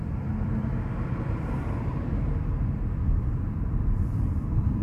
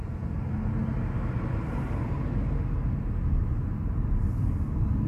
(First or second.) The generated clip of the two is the first